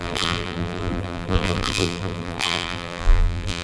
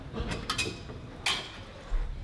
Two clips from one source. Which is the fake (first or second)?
first